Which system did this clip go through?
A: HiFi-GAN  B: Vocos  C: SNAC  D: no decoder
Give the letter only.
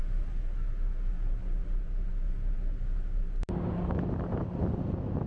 D